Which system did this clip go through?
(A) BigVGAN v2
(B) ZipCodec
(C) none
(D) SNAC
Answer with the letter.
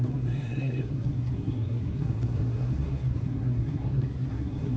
D